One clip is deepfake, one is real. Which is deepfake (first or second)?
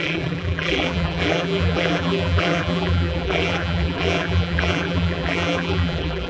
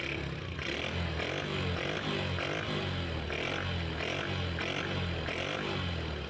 first